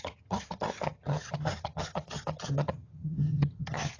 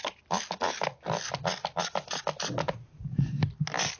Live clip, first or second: second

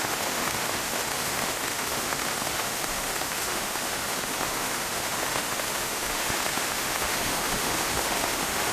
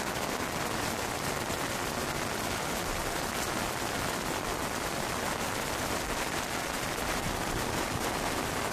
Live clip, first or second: second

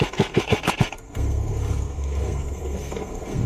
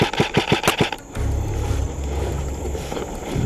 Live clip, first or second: second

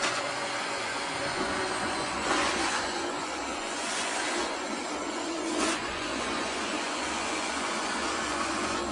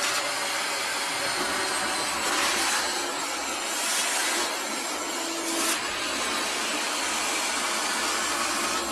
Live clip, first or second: second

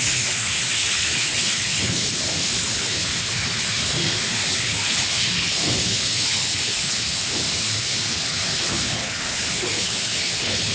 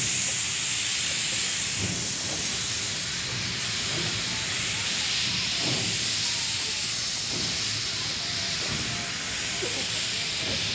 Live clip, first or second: second